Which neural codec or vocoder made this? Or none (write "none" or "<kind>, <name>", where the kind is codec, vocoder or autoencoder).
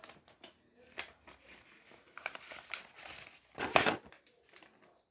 none